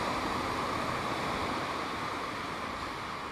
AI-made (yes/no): no